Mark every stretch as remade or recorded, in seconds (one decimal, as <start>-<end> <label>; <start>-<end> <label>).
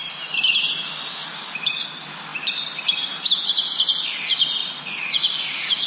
0.0-4.6 recorded; 4.6-5.9 remade